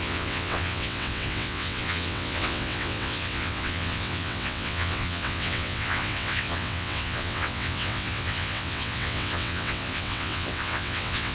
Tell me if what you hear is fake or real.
fake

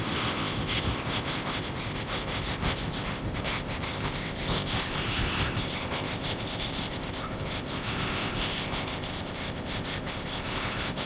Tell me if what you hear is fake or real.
fake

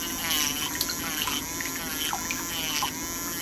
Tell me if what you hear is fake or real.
real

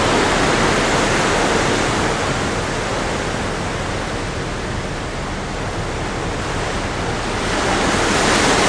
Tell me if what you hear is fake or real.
real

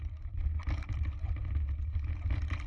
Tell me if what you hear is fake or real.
real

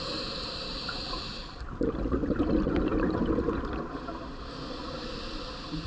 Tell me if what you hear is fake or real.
real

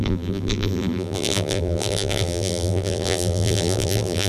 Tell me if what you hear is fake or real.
fake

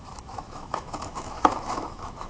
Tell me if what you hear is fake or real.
fake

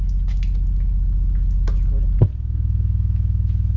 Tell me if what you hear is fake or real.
real